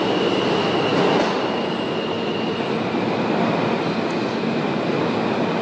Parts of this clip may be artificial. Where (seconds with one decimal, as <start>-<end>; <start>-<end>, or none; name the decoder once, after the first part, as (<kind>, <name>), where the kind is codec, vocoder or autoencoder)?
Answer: none